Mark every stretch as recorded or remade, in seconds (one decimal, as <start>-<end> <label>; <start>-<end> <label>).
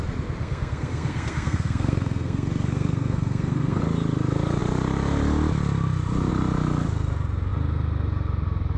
0.0-0.4 recorded; 0.4-3.8 remade; 3.8-8.8 recorded